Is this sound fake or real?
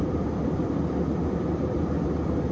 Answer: fake